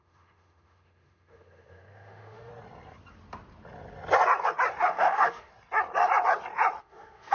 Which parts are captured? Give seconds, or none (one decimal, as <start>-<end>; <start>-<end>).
2.5-4.8; 5.5-6.8